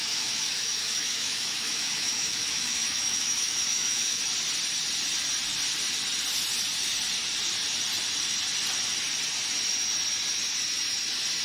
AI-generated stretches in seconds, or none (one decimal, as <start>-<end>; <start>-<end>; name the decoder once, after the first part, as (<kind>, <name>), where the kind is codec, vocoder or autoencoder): 0.0-4.2 (autoencoder, DAC-VAE)